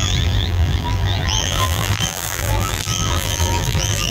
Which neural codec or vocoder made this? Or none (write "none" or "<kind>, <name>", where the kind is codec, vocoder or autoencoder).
vocoder, BigVGAN v2